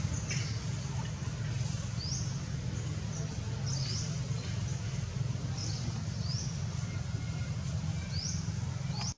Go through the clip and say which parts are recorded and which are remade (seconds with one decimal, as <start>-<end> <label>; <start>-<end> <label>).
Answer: 0.0-5.6 recorded; 5.6-6.7 remade; 6.7-9.2 recorded